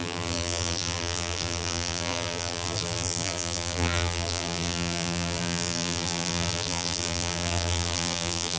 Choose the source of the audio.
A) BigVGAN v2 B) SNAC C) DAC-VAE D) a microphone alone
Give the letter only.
A